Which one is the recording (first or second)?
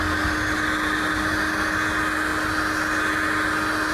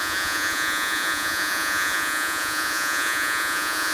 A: first